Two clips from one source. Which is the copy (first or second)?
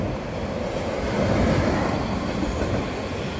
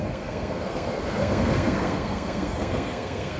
second